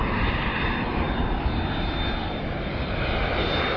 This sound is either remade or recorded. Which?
recorded